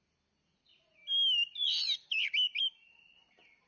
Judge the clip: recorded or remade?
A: recorded